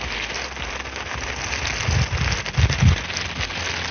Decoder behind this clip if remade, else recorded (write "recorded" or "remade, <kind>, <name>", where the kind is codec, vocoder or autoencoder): recorded